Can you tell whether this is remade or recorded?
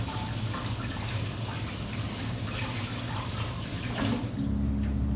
recorded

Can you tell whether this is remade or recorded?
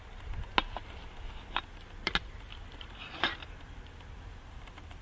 recorded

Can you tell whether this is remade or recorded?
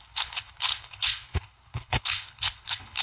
remade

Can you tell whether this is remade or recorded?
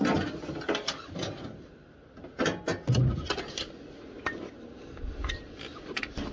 recorded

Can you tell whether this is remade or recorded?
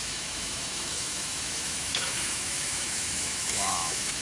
remade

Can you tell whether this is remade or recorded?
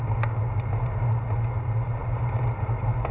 recorded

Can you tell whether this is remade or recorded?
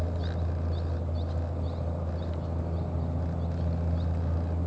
recorded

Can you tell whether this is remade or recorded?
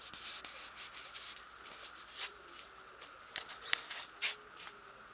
recorded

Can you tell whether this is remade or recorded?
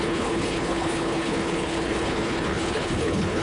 remade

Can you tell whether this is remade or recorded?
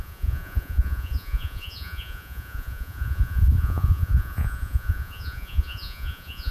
remade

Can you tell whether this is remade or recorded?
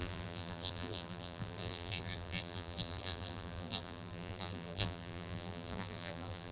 remade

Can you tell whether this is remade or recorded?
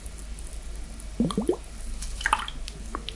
recorded